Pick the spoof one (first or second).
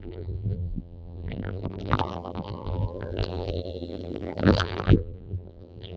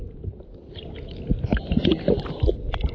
first